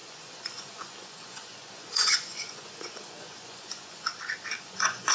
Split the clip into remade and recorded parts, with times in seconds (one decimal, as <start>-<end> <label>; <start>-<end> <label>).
0.0-4.1 remade; 4.1-4.6 recorded; 4.6-5.1 remade

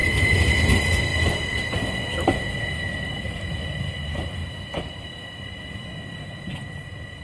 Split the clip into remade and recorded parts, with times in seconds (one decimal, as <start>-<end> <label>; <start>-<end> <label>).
0.0-7.2 recorded

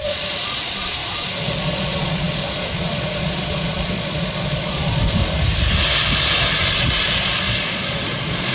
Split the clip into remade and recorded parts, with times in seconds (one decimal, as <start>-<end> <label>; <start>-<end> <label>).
0.0-5.2 remade; 5.2-6.7 recorded; 6.7-8.5 remade

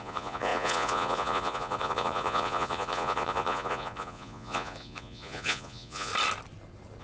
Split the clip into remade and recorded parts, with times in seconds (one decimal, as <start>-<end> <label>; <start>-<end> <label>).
0.0-6.1 remade; 6.1-7.0 recorded

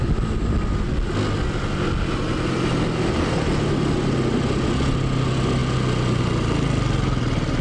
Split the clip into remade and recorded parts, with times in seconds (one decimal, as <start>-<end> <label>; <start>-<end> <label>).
0.0-7.6 recorded

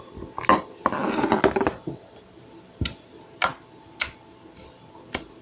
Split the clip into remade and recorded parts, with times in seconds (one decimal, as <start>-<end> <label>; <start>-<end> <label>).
0.0-5.4 recorded

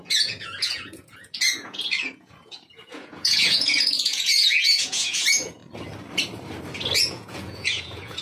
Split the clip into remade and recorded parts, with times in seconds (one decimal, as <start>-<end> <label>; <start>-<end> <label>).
0.0-5.6 remade; 5.6-7.0 recorded; 7.0-8.2 remade

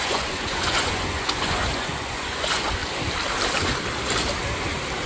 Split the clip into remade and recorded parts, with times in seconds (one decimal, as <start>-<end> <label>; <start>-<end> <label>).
0.0-2.8 remade; 2.8-5.1 recorded